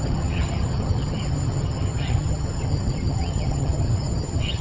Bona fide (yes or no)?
no